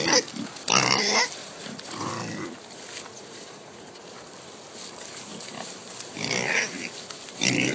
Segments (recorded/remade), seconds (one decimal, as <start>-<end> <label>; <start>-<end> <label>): 0.0-1.4 recorded; 1.4-2.1 remade; 2.1-3.1 recorded; 3.1-4.1 remade; 4.1-7.7 recorded